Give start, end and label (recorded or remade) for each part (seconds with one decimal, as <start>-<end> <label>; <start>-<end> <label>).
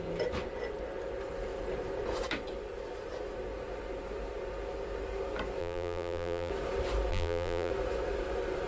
0.0-5.6 recorded; 5.6-6.5 remade; 6.5-7.1 recorded; 7.1-7.7 remade; 7.7-8.7 recorded